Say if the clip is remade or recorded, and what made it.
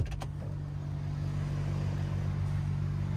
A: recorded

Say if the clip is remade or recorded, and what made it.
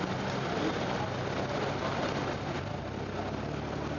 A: recorded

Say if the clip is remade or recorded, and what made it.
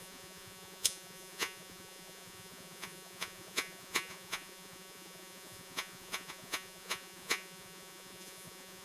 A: remade, vocoder, Vocos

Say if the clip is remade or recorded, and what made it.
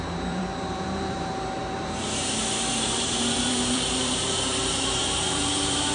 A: remade, vocoder, BigVGAN v2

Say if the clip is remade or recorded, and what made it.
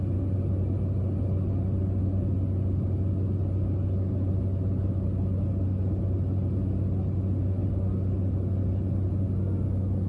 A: recorded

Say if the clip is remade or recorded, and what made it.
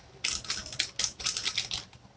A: recorded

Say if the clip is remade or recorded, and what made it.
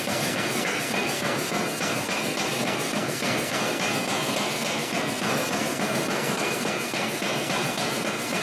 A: remade, codec, SNAC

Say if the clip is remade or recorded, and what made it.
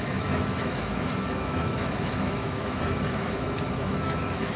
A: remade, autoencoder, DAC-VAE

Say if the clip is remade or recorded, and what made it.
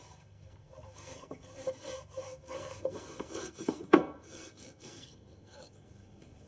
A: remade, codec, SNAC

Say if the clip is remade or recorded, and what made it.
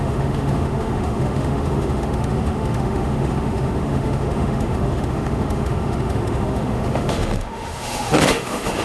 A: remade, autoencoder, DAC-VAE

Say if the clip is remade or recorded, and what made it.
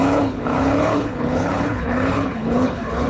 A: remade, codec, HILCodec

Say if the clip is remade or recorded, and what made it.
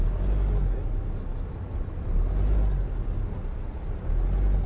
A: recorded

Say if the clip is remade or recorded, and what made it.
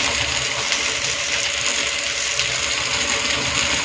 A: recorded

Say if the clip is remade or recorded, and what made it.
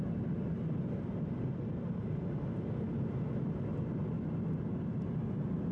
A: recorded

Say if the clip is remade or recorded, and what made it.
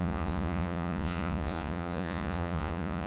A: remade, vocoder, Vocos